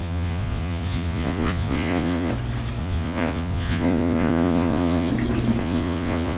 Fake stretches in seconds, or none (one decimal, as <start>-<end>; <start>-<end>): 0.0-2.3; 2.8-5.1; 5.6-6.4